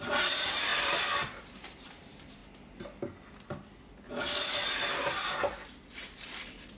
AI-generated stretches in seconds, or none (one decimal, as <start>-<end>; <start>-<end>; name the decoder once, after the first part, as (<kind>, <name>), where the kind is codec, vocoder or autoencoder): 0.0-0.7 (vocoder, BigVGAN v2); 1.4-2.4